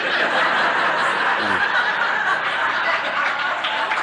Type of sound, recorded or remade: recorded